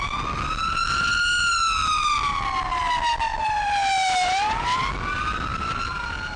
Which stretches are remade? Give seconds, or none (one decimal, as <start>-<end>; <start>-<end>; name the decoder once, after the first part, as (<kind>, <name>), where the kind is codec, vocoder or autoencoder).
3.3-4.9 (vocoder, BigVGAN v2); 5.5-6.4